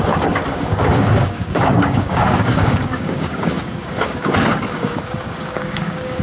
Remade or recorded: remade